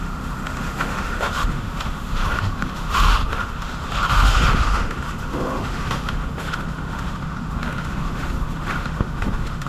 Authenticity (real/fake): fake